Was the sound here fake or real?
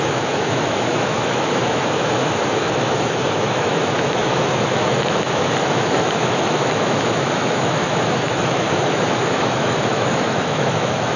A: fake